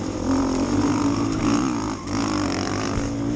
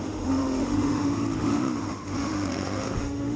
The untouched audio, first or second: first